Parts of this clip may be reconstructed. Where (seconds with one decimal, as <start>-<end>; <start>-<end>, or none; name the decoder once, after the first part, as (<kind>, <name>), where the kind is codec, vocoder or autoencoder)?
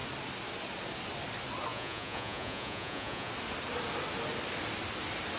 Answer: 1.7-3.3 (vocoder, Vocos)